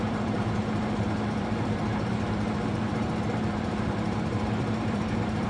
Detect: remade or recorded remade